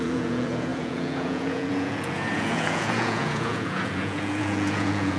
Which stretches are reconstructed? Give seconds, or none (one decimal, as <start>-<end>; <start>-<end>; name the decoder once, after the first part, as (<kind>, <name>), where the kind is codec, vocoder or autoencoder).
0.0-5.2 (vocoder, Vocos)